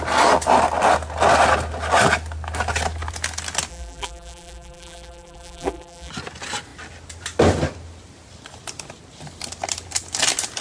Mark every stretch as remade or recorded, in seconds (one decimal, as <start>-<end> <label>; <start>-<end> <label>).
0.0-3.7 recorded; 3.7-6.1 remade; 6.1-10.6 recorded